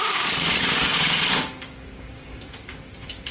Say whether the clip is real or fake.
fake